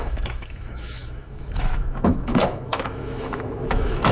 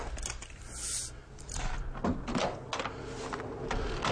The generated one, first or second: first